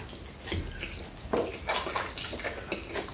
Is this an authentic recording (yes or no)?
yes